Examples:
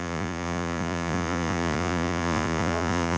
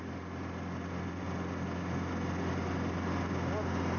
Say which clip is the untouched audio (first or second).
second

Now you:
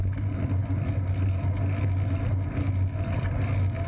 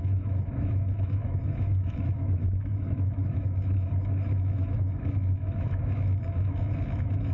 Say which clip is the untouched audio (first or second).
first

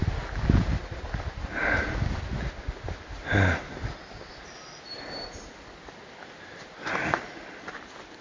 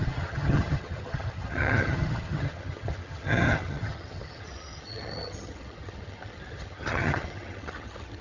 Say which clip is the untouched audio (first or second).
first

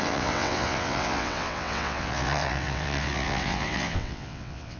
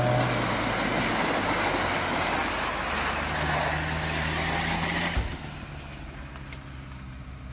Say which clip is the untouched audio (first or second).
second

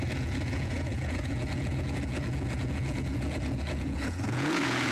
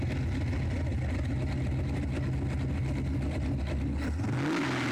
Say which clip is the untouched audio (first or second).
second